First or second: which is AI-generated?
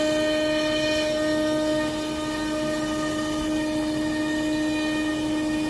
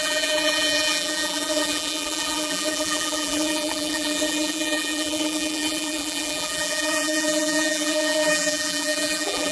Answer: second